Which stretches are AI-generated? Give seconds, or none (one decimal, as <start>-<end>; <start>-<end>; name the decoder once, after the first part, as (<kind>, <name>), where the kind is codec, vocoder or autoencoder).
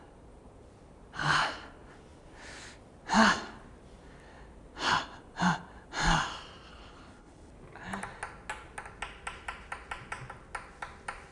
6.7-7.5 (codec, HILCodec)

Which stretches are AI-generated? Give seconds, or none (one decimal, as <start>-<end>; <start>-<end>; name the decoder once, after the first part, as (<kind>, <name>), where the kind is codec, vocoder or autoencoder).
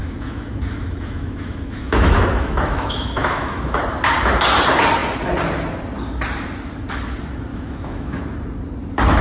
0.0-3.8 (autoencoder, DAC-VAE); 7.5-8.2